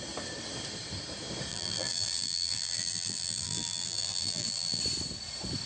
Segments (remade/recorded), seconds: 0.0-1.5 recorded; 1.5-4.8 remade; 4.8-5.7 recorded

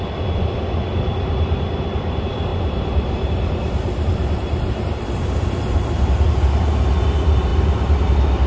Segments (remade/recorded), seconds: 0.0-2.5 recorded; 2.5-6.7 remade; 6.7-8.5 recorded

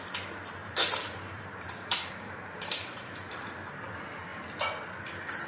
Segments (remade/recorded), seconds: 0.0-0.6 recorded; 0.6-3.5 remade; 3.5-5.5 recorded

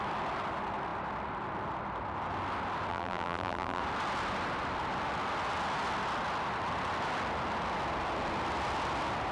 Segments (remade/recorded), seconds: 0.0-2.9 recorded; 2.9-3.8 remade; 3.8-9.3 recorded

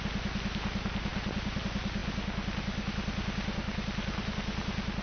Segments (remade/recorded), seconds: 0.0-5.0 recorded